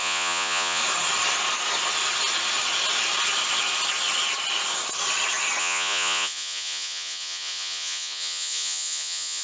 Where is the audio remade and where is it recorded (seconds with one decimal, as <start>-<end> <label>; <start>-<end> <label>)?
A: 0.0-0.8 remade; 0.8-5.6 recorded; 5.6-9.4 remade